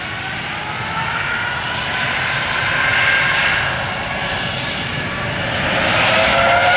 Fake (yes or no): no